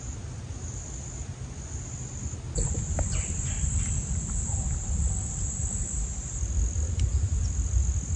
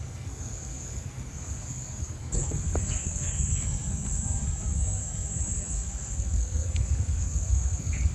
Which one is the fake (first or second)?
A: second